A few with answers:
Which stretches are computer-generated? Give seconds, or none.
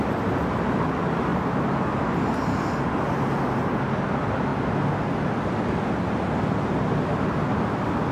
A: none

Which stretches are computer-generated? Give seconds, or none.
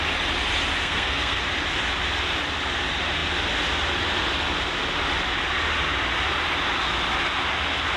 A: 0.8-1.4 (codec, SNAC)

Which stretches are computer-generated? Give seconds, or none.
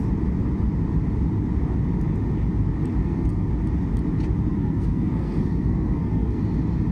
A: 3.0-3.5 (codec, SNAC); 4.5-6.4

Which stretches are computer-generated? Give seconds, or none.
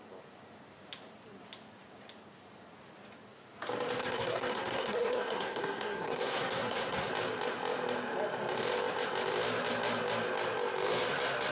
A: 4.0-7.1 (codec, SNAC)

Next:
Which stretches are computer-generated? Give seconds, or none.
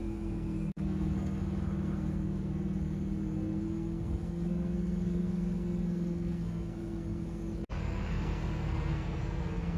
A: 0.0-9.8 (codec, SNAC)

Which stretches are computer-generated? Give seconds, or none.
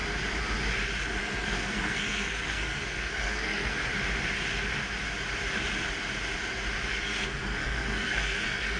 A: 1.2-3.8 (codec, SNAC); 6.9-8.8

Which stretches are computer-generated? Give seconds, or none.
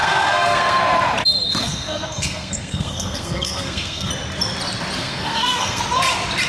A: 0.0-0.8 (codec, SNAC); 1.6-4.1; 5.0-5.8